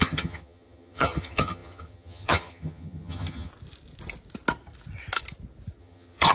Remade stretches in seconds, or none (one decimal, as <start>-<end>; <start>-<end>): 0.0-3.5; 5.8-6.3

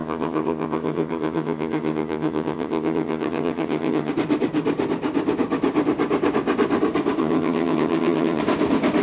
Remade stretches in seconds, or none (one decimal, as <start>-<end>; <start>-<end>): 0.0-4.1; 7.2-8.4

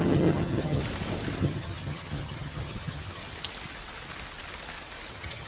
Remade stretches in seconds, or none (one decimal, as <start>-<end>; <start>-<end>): 0.0-0.8; 1.4-3.2; 5.1-5.5

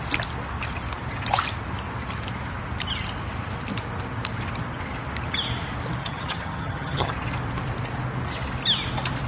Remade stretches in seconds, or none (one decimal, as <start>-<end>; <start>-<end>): 6.0-7.1

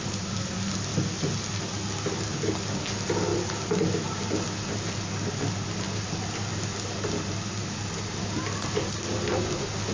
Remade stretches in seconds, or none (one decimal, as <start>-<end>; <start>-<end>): none

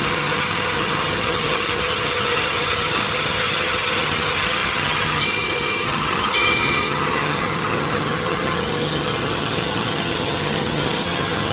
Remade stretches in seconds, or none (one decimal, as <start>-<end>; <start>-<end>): 0.0-11.5